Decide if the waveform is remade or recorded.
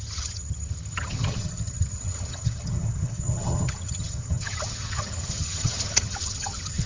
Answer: remade